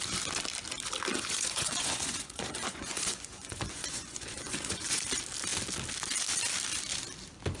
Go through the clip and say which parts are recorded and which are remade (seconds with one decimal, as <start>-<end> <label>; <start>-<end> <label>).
0.0-1.1 recorded; 1.1-5.0 remade; 5.0-7.6 recorded